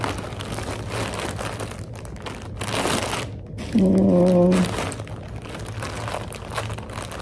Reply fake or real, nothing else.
real